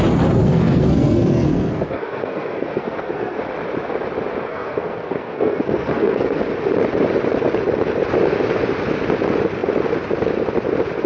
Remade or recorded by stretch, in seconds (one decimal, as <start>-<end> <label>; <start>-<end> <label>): 0.0-0.4 recorded; 0.4-3.4 remade; 3.4-4.5 recorded; 4.5-6.4 remade; 6.4-11.1 recorded